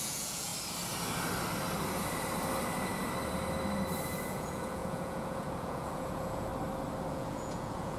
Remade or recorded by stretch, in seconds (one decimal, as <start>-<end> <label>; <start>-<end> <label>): 0.0-0.5 remade; 0.5-4.3 recorded; 4.3-6.5 remade; 6.5-7.1 recorded; 7.1-8.0 remade